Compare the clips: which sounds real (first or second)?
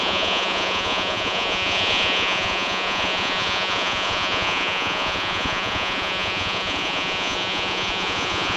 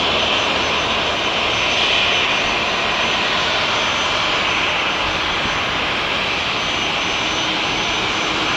second